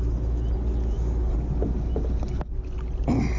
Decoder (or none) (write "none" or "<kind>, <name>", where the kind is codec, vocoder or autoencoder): none